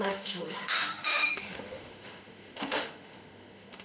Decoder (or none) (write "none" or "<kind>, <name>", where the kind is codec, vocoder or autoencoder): autoencoder, DAC-VAE